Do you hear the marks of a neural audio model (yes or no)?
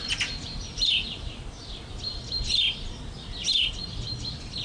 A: yes